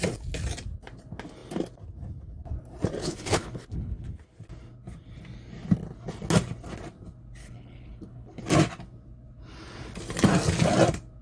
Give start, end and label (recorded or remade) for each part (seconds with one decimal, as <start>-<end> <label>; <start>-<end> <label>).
0.0-3.0 recorded; 3.0-4.1 remade; 4.1-7.4 recorded; 7.4-8.4 remade; 8.4-11.2 recorded